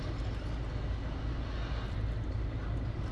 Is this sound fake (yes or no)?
no